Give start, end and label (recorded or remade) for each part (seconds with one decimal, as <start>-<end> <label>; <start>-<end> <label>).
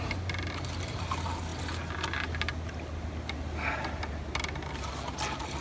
0.0-5.6 recorded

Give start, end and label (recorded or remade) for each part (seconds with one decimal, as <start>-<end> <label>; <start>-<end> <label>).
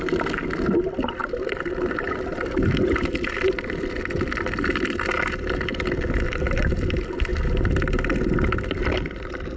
0.0-1.2 recorded; 1.2-4.7 remade; 4.7-9.6 recorded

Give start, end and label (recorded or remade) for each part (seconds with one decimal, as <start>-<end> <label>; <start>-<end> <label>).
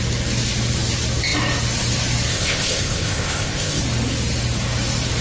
0.0-2.3 recorded; 2.3-3.8 remade; 3.8-5.2 recorded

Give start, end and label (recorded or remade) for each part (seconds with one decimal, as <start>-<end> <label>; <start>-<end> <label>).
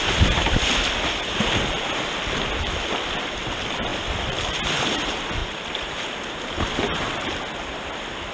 0.0-3.9 recorded; 3.9-4.6 remade; 4.6-5.4 recorded; 5.4-5.9 remade; 5.9-8.3 recorded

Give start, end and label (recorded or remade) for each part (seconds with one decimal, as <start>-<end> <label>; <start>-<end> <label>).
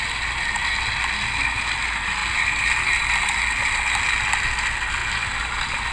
0.0-5.9 recorded